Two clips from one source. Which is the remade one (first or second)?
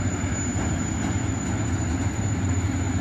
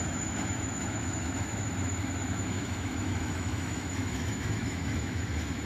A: second